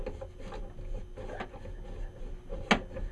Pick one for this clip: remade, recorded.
recorded